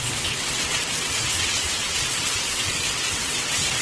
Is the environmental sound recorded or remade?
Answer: remade